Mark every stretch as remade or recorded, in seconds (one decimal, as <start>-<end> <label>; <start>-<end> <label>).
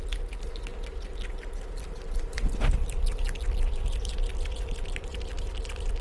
0.0-6.0 recorded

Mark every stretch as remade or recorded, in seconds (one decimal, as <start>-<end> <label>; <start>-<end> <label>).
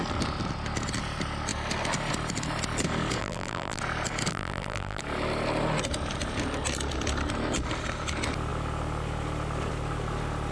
0.0-3.2 recorded; 3.2-3.8 remade; 3.8-4.3 recorded; 4.3-5.0 remade; 5.0-10.5 recorded